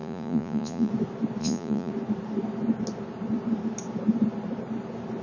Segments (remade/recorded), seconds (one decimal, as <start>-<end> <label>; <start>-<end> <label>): 0.0-0.9 remade; 0.9-1.4 recorded; 1.4-1.9 remade; 1.9-5.2 recorded